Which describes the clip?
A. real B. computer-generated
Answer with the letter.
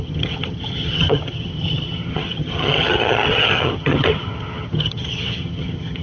B